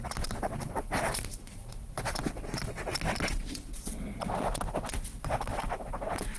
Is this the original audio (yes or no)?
no